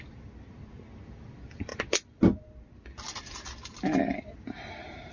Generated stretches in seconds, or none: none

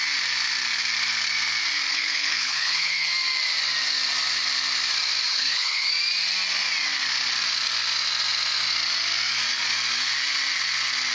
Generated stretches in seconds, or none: 1.9-3.1 (codec, HILCodec); 5.3-5.9

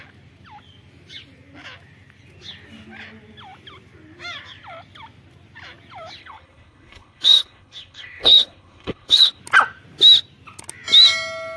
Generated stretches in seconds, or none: 6.2-9.4 (codec, HILCodec)

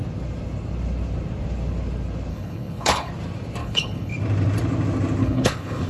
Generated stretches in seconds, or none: 2.3-3.1 (codec, HILCodec); 3.6-4.1; 5.2-5.9